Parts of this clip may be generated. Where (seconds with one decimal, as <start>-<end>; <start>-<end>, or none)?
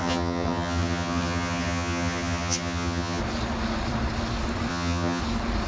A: 0.0-3.2; 4.7-5.2